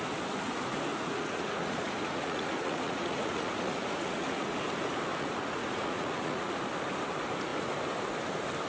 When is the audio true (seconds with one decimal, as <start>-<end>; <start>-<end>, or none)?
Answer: 0.0-0.9; 4.6-5.1; 6.6-8.7